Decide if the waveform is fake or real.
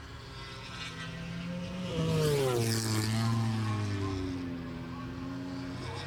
real